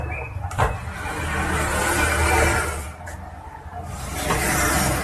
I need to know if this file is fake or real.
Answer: fake